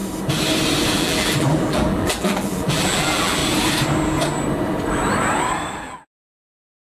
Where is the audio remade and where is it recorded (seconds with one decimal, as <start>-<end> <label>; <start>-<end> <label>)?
0.0-0.9 recorded; 0.9-3.4 remade; 3.4-5.7 recorded; 5.7-6.9 remade